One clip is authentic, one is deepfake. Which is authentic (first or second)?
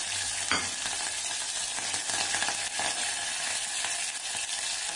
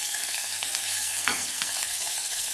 first